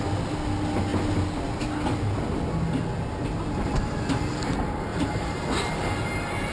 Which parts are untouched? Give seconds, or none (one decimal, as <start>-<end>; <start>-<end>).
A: 0.0-4.9; 5.7-6.5